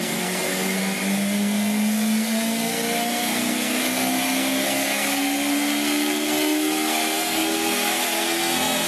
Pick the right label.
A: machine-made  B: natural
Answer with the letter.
A